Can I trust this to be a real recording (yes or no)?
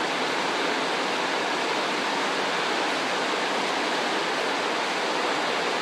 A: yes